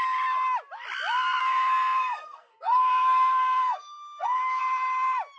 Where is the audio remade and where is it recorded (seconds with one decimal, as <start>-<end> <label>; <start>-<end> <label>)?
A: 0.0-1.4 recorded; 1.4-4.6 remade; 4.6-5.4 recorded